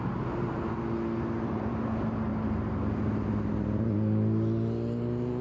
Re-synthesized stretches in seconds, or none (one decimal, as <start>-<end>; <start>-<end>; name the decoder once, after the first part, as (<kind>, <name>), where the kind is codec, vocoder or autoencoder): none